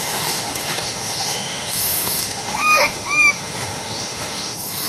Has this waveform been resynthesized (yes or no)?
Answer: yes